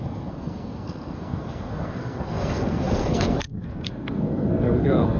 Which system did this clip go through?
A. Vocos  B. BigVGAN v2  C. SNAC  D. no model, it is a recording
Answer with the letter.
C